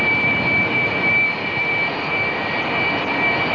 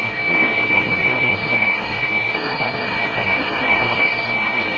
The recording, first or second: first